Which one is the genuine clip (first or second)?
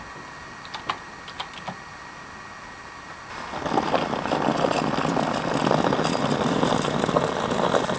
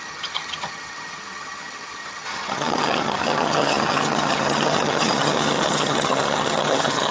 first